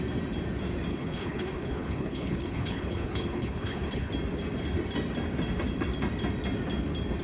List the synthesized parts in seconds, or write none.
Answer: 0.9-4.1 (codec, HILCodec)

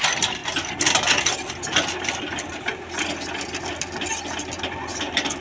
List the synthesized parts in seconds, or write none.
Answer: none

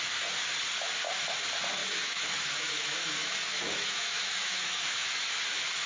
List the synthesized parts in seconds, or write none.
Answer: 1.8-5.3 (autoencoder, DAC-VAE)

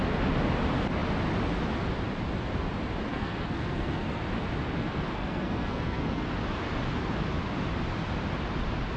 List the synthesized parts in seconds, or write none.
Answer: 3.1-4.2 (codec, SNAC); 4.8-6.3

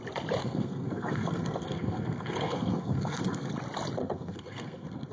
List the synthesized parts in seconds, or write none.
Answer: 0.4-3.5 (codec, SNAC); 4.0-5.1